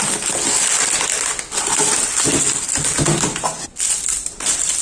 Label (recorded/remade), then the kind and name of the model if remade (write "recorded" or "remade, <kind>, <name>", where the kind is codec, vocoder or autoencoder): recorded